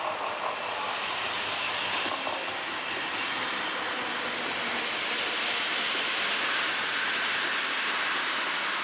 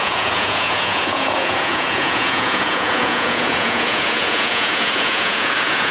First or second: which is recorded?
first